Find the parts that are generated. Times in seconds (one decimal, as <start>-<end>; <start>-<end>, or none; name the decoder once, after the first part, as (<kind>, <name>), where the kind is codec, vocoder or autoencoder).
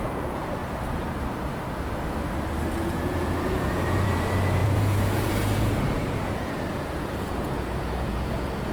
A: 0.0-0.6 (vocoder, Vocos); 2.7-8.7